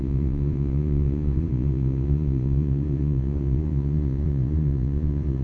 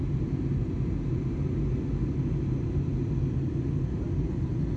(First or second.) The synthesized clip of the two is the first